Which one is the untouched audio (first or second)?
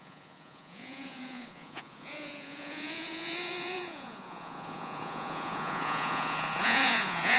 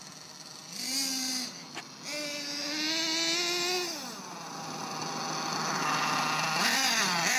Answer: second